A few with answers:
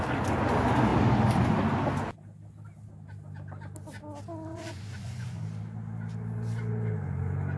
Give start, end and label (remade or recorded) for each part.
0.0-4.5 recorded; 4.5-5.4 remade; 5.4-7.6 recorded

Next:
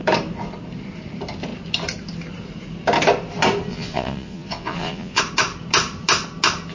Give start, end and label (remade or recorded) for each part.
0.0-3.7 recorded; 3.7-5.2 remade; 5.2-6.7 recorded

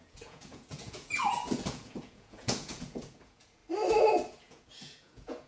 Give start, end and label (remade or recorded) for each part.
0.0-3.6 remade; 3.6-4.1 recorded; 4.1-5.5 remade